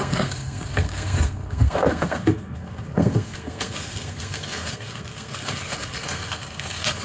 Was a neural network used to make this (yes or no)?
yes